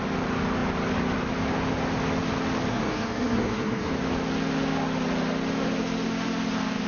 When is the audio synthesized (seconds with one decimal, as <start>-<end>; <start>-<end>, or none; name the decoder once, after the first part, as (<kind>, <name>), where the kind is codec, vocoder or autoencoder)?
2.7-3.9 (codec, SNAC)